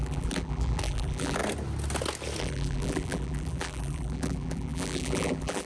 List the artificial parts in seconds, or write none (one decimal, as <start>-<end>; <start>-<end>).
0.0-1.4; 2.4-5.6